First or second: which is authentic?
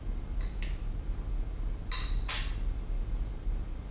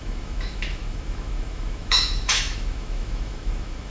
first